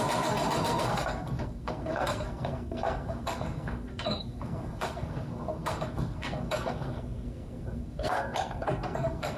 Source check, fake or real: fake